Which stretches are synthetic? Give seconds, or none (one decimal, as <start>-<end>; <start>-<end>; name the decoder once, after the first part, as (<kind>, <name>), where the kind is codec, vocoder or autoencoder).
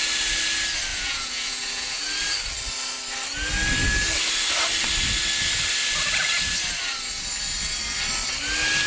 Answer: 0.9-2.0 (vocoder, Vocos)